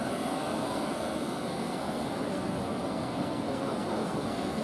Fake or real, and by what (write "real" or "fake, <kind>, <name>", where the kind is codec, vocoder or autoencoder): fake, codec, SNAC